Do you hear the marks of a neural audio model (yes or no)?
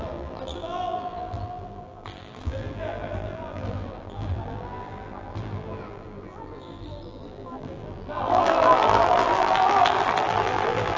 yes